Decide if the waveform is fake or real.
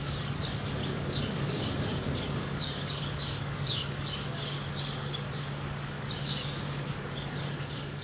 fake